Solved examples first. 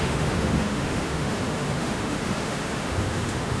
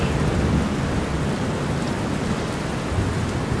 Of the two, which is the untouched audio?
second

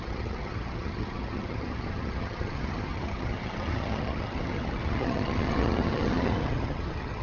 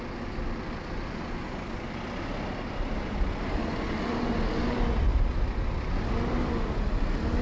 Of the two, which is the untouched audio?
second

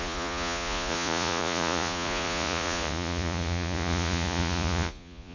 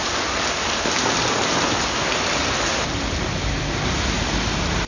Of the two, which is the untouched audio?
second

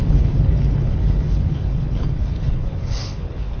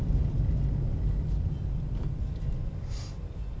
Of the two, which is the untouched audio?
second